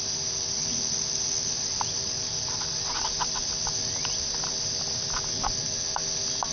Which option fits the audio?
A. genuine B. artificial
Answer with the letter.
A